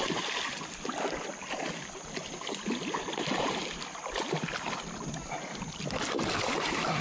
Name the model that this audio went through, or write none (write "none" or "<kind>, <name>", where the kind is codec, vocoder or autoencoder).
none